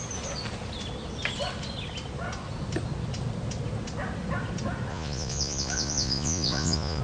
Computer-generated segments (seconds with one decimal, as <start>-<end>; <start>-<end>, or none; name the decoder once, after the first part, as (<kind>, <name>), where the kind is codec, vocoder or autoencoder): 4.9-7.0 (vocoder, Vocos)